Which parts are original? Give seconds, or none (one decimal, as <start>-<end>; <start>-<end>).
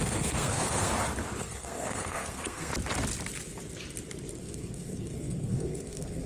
0.9-1.4; 2.7-4.4